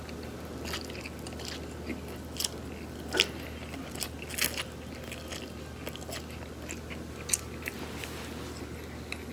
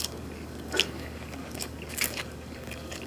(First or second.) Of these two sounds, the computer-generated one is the second